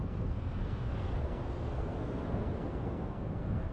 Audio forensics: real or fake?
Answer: fake